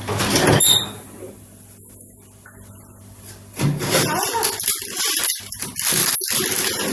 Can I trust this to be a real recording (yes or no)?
yes